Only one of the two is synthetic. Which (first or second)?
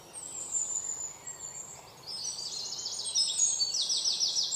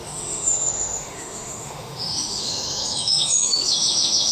second